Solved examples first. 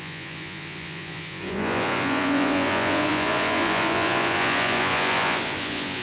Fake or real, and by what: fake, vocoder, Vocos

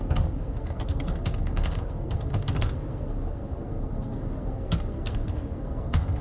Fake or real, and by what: fake, codec, SNAC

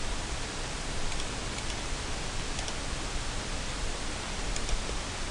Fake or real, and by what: real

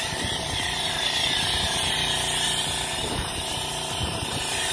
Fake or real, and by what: fake, vocoder, BigVGAN v2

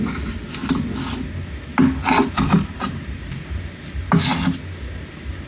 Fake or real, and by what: real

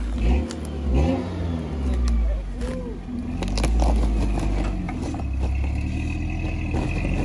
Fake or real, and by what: real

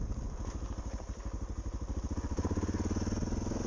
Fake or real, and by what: real